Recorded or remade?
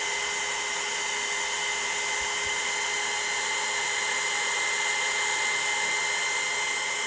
recorded